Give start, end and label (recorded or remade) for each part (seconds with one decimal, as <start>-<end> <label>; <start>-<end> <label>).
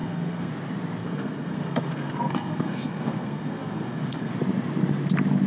0.0-0.5 remade; 0.5-1.0 recorded; 1.0-4.3 remade; 4.3-5.5 recorded